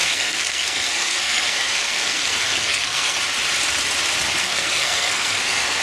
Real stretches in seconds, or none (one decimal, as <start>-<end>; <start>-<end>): 3.2-4.4